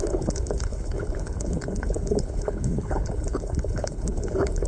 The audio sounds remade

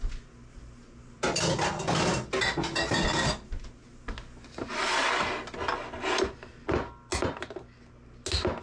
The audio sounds recorded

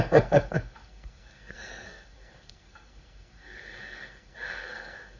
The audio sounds remade